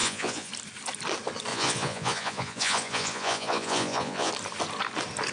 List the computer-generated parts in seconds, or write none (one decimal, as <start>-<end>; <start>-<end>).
0.0-0.5; 1.5-4.3